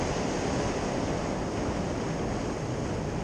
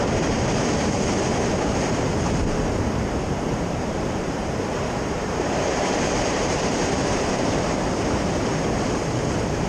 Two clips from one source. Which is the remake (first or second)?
second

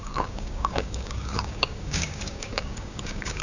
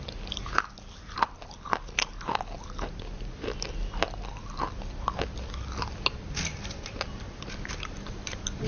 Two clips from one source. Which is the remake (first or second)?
first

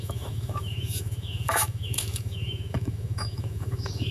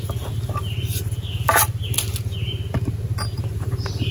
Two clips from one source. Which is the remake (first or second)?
first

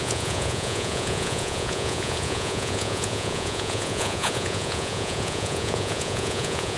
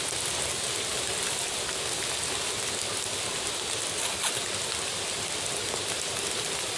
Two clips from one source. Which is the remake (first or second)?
first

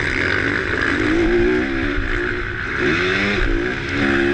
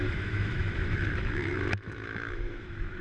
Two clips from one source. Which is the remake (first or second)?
second